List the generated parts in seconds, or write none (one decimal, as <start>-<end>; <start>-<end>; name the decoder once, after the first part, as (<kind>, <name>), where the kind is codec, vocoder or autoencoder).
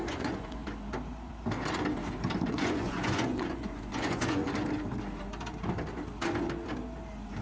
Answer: 0.0-0.6 (vocoder, Vocos); 2.5-4.4